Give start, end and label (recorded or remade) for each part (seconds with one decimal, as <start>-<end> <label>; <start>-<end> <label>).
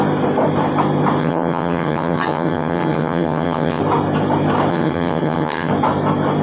0.0-1.2 recorded; 1.2-3.8 remade; 3.8-4.7 recorded; 4.7-5.7 remade; 5.7-6.4 recorded